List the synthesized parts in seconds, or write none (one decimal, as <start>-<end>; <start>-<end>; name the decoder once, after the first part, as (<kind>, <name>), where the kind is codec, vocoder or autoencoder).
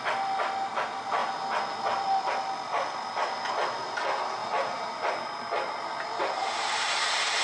4.4-5.1 (vocoder, BigVGAN v2); 6.4-7.4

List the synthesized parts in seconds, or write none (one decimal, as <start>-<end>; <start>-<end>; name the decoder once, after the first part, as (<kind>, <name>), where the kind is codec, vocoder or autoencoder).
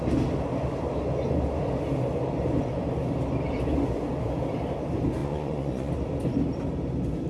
5.2-5.9 (vocoder, Vocos)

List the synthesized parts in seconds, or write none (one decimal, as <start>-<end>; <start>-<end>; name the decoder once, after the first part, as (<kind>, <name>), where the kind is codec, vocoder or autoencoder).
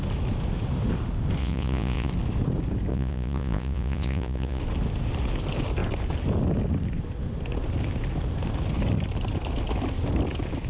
1.4-2.1 (vocoder, Vocos); 2.9-4.6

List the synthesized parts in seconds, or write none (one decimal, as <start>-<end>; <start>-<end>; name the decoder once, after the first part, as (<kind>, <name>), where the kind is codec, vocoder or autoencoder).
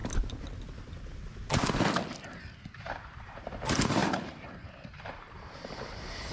2.2-6.3 (vocoder, BigVGAN v2)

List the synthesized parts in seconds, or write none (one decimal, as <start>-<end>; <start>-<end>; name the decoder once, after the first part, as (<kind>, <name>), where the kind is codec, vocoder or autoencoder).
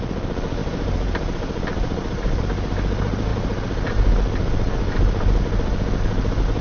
0.6-2.4 (vocoder, BigVGAN v2)